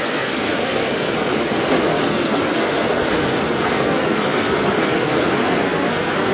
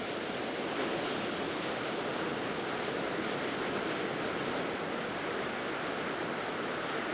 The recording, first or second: second